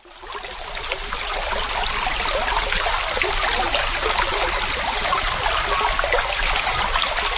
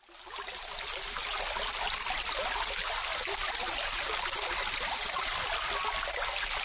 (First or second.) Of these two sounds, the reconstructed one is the first